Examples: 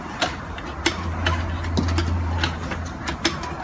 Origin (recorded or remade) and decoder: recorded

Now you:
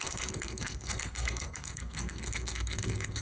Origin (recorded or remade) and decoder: remade, codec, SNAC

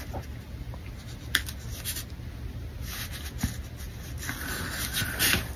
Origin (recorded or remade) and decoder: recorded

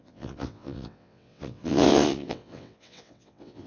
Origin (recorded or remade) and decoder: remade, vocoder, WaveNeXt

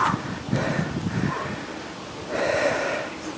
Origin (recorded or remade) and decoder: recorded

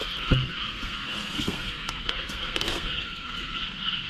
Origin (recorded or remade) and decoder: remade, codec, SNAC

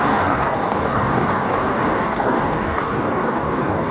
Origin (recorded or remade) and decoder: remade, codec, DAC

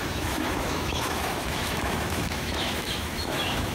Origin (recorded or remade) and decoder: remade, autoencoder, DAC-VAE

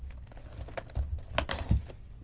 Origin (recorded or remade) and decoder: recorded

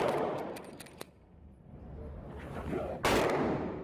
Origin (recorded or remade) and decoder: recorded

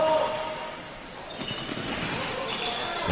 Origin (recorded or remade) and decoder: recorded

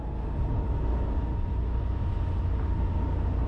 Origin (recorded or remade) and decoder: recorded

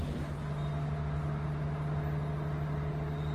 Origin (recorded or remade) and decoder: recorded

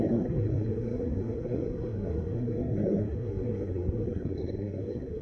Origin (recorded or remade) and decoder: remade, codec, SNAC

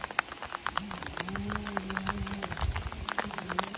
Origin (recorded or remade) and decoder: recorded